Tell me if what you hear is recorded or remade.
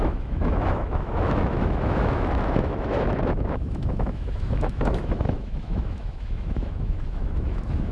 remade